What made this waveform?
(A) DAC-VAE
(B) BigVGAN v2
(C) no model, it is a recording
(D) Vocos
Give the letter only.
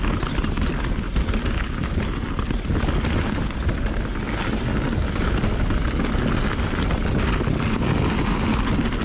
C